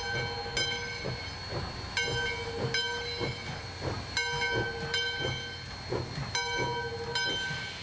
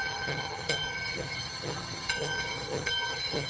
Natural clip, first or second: first